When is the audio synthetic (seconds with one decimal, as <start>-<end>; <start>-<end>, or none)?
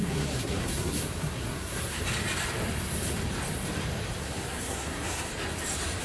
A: 0.0-2.0; 4.2-5.3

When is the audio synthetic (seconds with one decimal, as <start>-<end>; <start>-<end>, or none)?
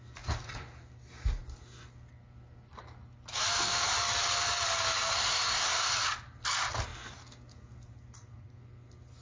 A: 5.3-5.9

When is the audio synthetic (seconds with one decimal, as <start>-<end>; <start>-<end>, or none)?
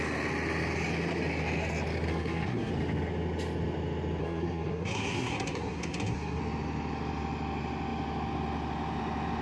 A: 2.1-2.7; 4.2-6.4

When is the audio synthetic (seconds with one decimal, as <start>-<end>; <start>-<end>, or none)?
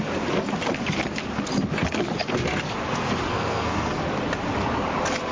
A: 3.3-4.0